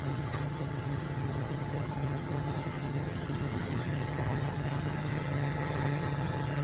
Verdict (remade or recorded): remade